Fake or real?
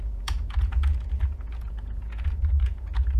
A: fake